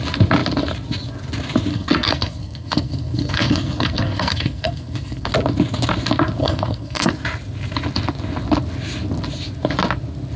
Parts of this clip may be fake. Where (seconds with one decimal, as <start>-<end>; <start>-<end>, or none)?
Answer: 1.7-5.3; 6.4-7.1